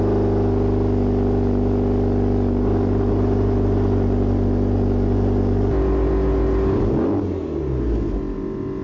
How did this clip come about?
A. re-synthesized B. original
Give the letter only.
B